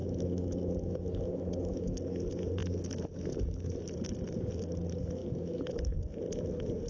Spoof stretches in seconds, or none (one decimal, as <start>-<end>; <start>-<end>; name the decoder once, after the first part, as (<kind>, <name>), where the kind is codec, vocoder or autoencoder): 0.0-2.0 (autoencoder, DAC-VAE); 2.6-3.8; 5.2-5.9